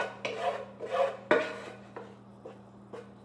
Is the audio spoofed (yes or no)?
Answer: no